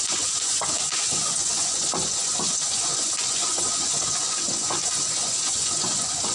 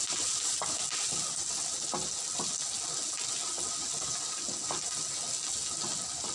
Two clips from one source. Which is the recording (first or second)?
second